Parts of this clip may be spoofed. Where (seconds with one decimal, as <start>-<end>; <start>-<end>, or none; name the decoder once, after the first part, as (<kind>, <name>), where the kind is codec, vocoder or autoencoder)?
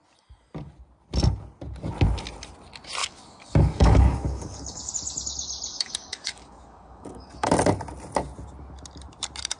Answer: 3.0-4.9 (codec, DAC); 5.7-7.5